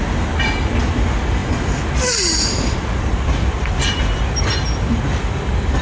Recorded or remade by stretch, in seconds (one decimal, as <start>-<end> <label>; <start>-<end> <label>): 0.0-5.8 recorded